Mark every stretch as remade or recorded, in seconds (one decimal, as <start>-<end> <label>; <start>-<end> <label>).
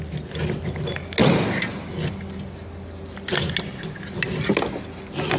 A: 0.0-5.4 recorded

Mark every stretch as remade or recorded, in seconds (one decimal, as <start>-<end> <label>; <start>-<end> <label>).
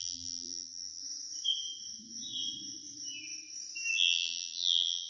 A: 0.0-1.0 remade; 1.0-3.9 recorded; 3.9-5.1 remade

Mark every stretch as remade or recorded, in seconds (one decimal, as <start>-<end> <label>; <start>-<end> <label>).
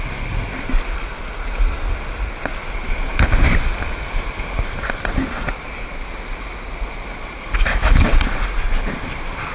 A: 0.0-9.5 recorded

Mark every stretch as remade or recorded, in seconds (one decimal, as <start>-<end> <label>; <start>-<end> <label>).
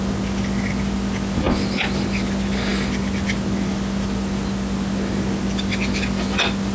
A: 0.0-6.7 recorded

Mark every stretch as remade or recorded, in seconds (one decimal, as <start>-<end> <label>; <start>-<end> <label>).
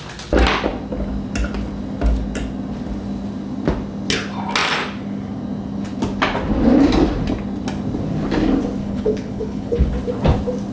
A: 0.0-8.8 recorded; 8.8-9.9 remade; 9.9-10.7 recorded